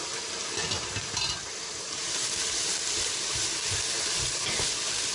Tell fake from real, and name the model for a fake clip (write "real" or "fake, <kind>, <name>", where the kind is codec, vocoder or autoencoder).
real